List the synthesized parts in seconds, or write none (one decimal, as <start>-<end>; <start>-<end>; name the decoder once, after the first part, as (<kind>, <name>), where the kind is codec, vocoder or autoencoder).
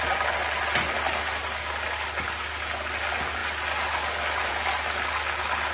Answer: none